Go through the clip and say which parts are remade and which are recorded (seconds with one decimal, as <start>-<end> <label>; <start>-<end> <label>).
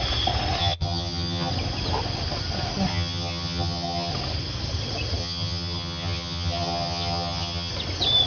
0.0-0.6 recorded; 0.6-1.5 remade; 1.5-2.9 recorded; 2.9-4.1 remade; 4.1-5.2 recorded; 5.2-7.7 remade; 7.7-8.3 recorded